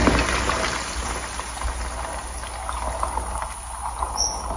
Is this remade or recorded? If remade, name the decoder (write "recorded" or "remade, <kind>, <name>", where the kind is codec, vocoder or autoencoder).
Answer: recorded